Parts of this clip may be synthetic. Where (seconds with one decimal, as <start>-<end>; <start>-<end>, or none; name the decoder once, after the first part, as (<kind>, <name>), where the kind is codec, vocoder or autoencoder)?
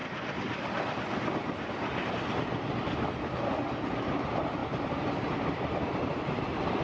4.6-6.8 (vocoder, BigVGAN v2)